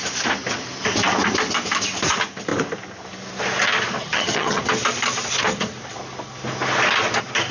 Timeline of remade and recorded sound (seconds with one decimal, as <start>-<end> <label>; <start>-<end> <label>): 0.0-4.0 recorded; 4.0-4.6 remade; 4.6-7.5 recorded